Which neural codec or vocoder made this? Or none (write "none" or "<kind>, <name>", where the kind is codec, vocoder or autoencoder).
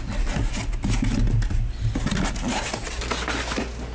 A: none